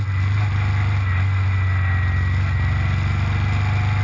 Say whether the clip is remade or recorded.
recorded